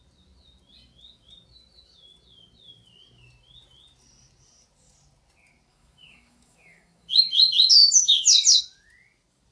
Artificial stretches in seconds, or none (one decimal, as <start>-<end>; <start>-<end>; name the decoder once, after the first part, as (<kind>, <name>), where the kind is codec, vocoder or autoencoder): 5.7-7.3 (autoencoder, DAC-VAE)